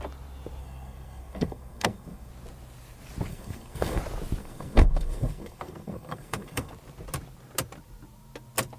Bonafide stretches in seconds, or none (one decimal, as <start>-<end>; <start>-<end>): 0.0-0.6; 2.3-3.3; 4.0-4.4; 6.7-8.8